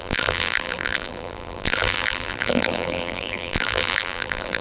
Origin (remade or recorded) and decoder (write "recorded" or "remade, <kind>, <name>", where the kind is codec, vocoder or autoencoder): remade, vocoder, BigVGAN v2